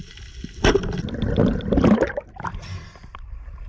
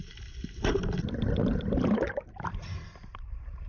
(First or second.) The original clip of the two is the first